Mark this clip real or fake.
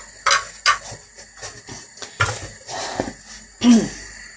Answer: real